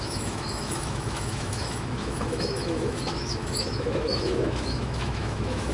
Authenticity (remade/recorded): remade